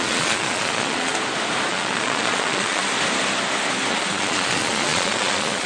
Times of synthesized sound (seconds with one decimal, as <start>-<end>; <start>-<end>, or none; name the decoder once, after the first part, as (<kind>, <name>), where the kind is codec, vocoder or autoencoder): 0.0-1.1 (vocoder, Vocos); 1.7-2.8; 3.9-5.7